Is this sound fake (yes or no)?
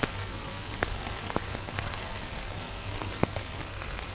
yes